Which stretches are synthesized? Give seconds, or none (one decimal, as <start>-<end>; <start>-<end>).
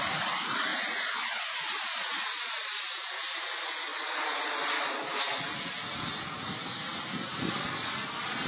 none